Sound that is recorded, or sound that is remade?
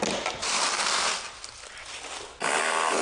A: recorded